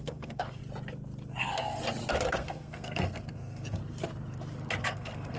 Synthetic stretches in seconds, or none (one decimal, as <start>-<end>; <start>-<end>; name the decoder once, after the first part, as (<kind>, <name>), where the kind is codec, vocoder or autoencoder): 0.0-0.6 (codec, SNAC); 1.4-1.8; 2.3-3.8; 4.8-5.4